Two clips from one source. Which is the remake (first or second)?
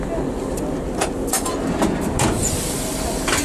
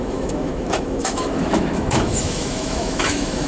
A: second